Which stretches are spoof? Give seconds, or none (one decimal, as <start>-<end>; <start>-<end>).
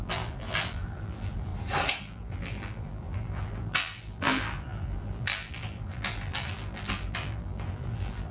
0.0-1.5; 2.0-8.3